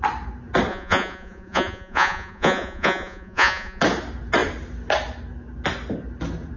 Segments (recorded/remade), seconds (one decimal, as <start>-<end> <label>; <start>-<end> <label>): 0.0-0.7 recorded; 0.7-3.8 remade; 3.8-6.6 recorded